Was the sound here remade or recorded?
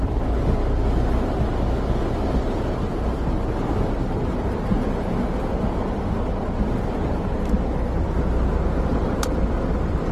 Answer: recorded